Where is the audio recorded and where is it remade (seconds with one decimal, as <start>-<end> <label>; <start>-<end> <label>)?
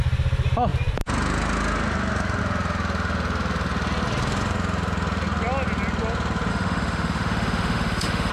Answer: 0.0-6.5 recorded; 6.5-8.3 remade